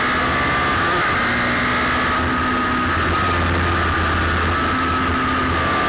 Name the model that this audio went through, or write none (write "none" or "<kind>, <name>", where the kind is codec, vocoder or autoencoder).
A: none